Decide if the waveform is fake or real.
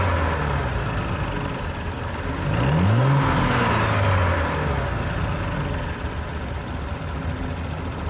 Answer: real